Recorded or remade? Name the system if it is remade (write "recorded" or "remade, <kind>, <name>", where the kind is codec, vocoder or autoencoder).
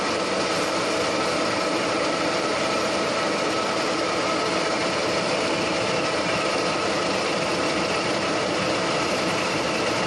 recorded